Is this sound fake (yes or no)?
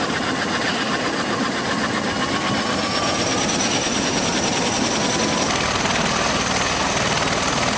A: no